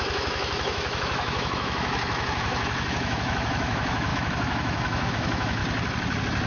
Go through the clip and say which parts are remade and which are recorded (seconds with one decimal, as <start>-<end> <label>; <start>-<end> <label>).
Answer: 0.0-5.6 remade; 5.6-6.5 recorded